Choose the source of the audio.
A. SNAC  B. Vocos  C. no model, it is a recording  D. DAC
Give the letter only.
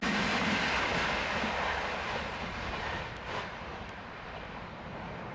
C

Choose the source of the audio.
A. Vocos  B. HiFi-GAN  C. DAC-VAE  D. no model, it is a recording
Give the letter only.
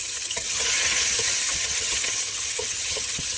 B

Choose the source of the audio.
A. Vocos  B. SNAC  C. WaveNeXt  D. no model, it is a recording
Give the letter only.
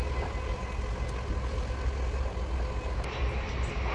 D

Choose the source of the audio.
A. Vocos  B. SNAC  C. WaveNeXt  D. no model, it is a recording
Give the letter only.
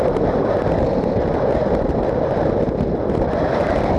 D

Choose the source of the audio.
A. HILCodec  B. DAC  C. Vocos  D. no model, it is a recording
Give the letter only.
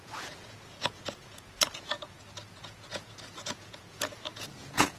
C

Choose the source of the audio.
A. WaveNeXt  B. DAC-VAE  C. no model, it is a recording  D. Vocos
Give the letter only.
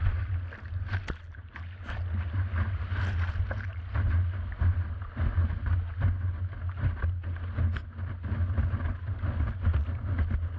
C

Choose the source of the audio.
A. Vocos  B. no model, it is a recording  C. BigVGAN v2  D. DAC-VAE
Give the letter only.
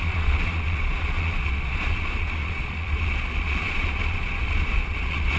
A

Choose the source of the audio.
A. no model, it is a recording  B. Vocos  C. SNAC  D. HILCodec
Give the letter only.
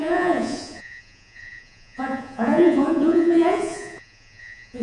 B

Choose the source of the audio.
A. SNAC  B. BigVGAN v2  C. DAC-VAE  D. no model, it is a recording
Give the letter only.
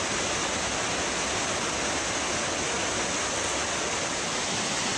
D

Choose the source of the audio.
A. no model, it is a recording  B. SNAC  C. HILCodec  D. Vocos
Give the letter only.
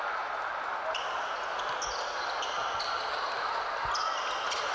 A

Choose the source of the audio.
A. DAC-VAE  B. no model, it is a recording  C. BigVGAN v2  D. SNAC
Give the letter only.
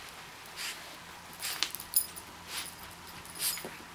B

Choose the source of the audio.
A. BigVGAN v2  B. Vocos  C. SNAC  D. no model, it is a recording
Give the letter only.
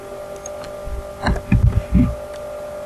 D